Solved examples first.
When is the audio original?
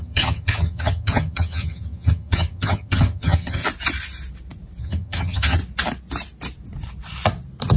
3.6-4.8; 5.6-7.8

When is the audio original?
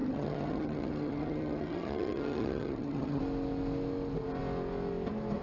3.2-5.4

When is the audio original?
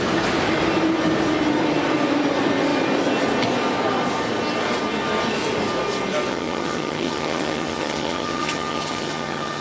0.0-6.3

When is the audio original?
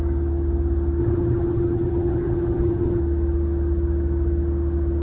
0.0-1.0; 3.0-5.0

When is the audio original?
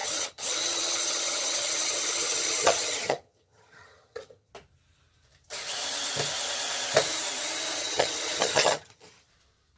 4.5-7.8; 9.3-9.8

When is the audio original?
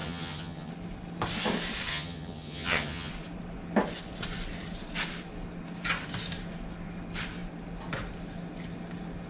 0.7-1.9; 3.1-9.3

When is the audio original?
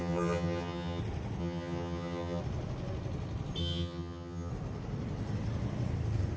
1.0-1.4; 2.4-3.6; 4.5-6.4